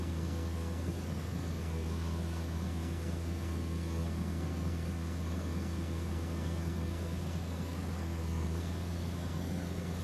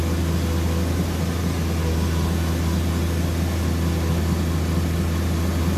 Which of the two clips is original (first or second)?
second